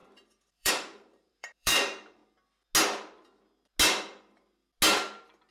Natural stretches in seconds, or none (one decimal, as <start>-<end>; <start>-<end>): 2.2-5.5